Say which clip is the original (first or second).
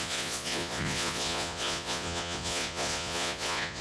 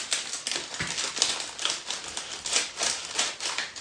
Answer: second